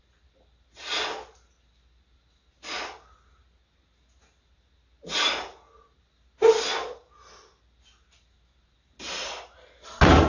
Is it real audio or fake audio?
real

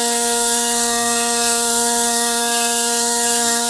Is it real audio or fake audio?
fake